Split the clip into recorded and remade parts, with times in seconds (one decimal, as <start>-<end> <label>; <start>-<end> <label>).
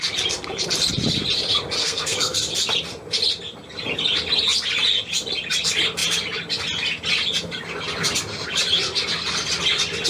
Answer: 0.0-1.8 recorded; 1.8-2.4 remade; 2.4-10.1 recorded